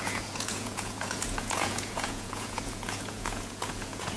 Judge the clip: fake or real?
fake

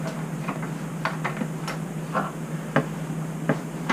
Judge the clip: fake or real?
real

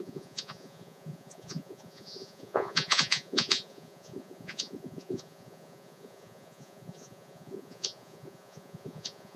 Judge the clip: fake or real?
fake